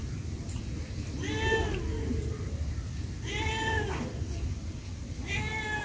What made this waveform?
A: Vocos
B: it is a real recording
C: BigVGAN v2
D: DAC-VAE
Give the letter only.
B